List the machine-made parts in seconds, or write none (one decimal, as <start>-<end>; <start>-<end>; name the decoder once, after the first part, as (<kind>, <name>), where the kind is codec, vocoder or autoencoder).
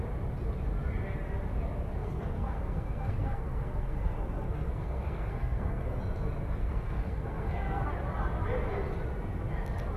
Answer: 2.0-6.0 (codec, SNAC); 6.6-7.9